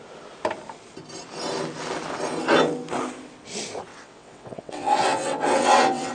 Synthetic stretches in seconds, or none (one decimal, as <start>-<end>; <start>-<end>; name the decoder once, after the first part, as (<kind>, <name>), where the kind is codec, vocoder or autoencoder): 3.9-6.1 (vocoder, WaveNeXt)